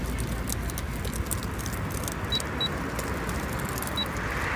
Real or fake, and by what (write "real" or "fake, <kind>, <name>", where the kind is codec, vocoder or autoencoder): real